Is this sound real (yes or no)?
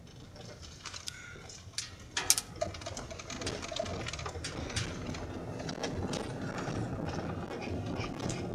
yes